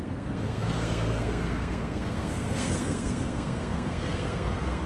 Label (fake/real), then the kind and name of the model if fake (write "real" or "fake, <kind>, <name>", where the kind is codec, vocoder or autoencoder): fake, codec, SNAC